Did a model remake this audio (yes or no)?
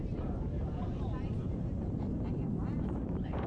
yes